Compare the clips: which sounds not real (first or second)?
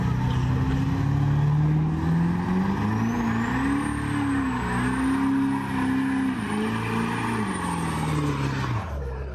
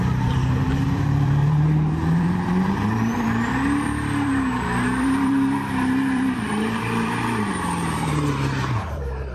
second